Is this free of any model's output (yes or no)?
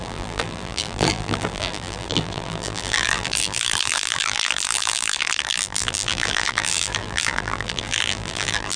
no